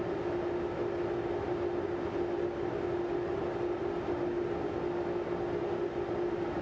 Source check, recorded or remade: recorded